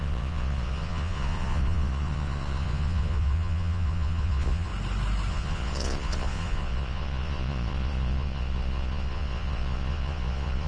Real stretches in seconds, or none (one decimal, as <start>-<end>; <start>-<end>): 4.7-5.3